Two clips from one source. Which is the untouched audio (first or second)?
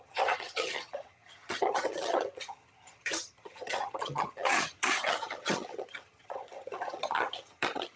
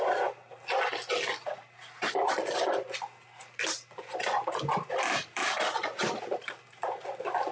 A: second